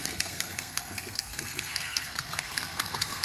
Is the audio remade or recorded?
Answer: remade